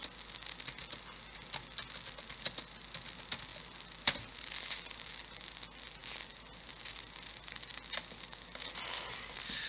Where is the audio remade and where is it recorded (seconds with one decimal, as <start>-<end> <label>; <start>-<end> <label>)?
0.0-9.7 recorded

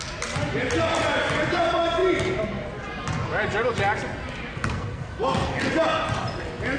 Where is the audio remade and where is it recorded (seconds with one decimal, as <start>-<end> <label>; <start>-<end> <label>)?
0.0-4.5 recorded; 4.5-5.6 remade; 5.6-6.8 recorded